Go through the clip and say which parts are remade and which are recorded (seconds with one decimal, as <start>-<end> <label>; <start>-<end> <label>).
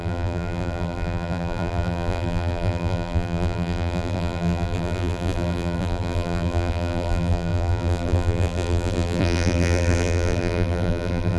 0.0-11.4 remade